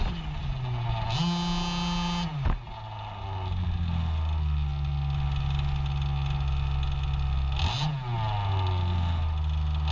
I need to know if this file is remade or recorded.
recorded